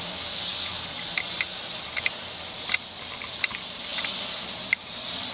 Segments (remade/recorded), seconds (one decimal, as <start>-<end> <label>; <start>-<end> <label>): 0.0-0.5 recorded; 0.5-3.4 remade; 3.4-3.9 recorded; 3.9-5.3 remade